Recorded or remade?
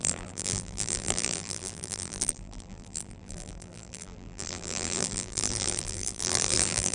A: remade